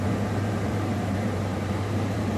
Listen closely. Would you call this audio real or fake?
fake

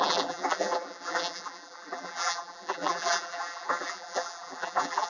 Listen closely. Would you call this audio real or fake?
fake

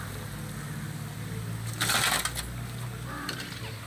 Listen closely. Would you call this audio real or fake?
real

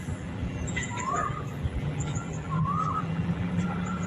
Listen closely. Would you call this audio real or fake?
fake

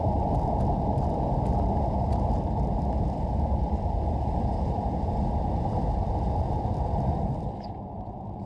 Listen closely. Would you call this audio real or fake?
fake